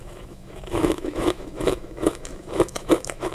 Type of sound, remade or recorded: remade